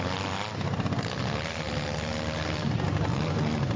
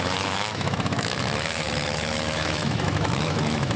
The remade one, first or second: second